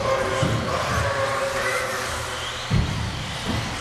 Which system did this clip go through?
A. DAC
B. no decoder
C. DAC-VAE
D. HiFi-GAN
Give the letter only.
B